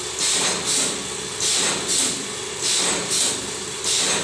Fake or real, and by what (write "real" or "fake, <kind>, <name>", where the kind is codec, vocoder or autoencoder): real